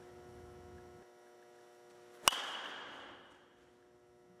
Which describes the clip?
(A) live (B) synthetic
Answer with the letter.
A